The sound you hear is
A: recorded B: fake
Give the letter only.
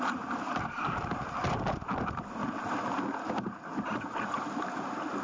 A